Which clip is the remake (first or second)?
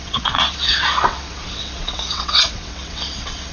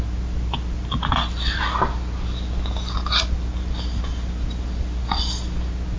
first